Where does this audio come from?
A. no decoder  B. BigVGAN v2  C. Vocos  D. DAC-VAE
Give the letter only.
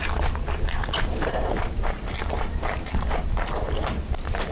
B